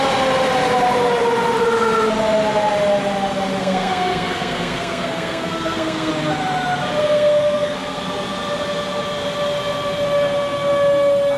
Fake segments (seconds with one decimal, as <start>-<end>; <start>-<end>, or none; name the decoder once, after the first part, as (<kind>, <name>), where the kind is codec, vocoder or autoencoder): 3.6-6.1 (codec, SNAC); 7.0-8.0